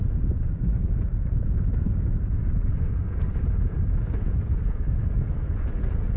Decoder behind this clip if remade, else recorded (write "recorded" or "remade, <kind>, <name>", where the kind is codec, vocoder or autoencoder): remade, vocoder, Vocos